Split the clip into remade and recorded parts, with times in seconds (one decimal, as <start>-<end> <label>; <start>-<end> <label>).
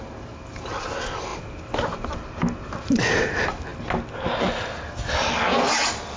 0.0-6.2 recorded